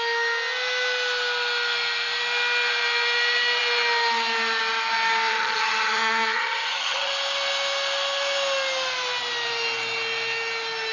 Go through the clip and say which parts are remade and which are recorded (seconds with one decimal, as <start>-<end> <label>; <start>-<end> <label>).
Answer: 0.0-5.3 recorded; 5.3-7.1 remade; 7.1-10.9 recorded